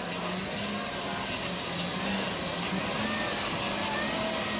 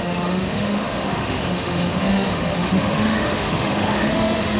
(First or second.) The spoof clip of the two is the second